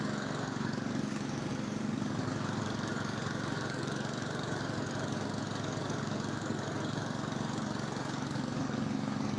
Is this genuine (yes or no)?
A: no